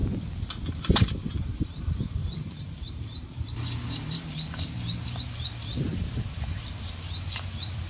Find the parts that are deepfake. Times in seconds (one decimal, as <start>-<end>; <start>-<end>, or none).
1.4-7.9